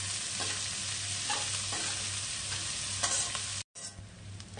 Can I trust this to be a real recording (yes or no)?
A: yes